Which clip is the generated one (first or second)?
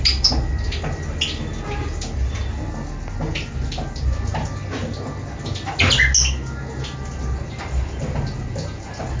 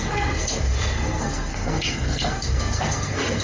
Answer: second